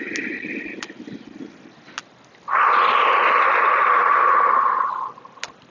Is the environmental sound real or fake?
real